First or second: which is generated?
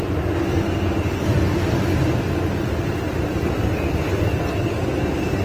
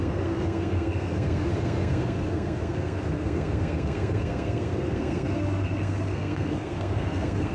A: second